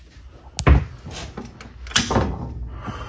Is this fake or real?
real